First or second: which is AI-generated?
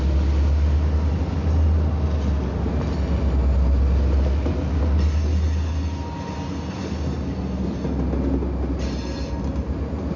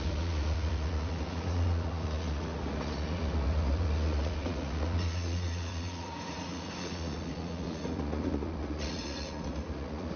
second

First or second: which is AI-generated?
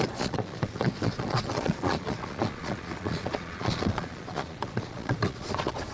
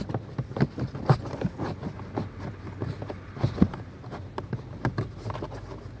first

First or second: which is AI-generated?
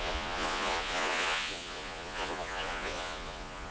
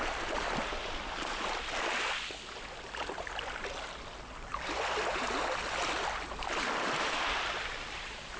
first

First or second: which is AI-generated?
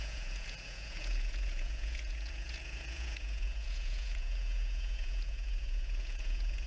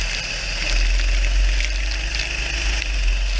first